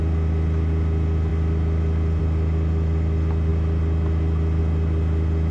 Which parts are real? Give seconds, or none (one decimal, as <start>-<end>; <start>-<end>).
0.0-5.5

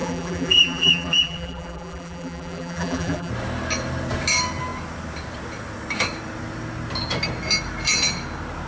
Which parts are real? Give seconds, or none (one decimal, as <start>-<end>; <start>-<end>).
3.3-8.7

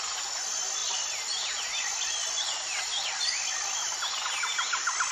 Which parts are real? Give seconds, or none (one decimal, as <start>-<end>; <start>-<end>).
0.0-5.1

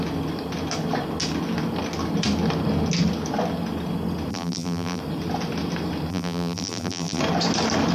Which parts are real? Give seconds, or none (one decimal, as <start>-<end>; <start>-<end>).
0.0-4.3; 5.0-6.1; 7.2-7.9

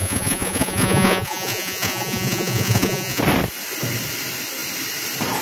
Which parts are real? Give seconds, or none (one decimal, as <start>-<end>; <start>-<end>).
3.2-5.4

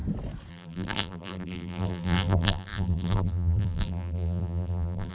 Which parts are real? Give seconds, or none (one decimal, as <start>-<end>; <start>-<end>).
0.0-0.5